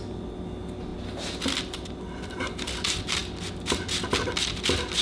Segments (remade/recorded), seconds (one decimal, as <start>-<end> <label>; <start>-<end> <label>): 0.0-5.0 recorded